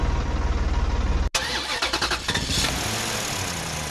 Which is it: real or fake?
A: real